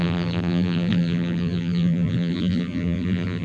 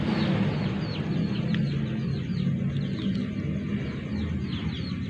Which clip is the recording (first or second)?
second